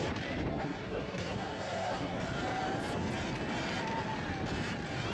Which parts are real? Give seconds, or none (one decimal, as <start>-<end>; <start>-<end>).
0.0-0.5; 2.2-5.1